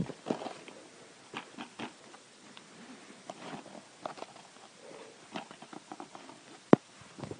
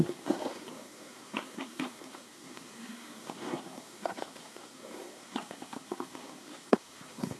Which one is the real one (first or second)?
first